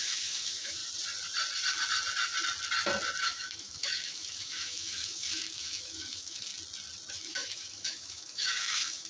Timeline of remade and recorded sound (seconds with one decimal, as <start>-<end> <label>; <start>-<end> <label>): 0.0-0.8 remade; 0.8-3.2 recorded; 3.2-6.5 remade; 6.5-7.1 recorded; 7.1-9.1 remade